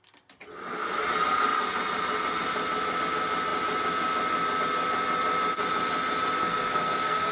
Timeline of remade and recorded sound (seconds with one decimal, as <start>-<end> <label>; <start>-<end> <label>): 0.0-6.4 recorded; 6.4-7.3 remade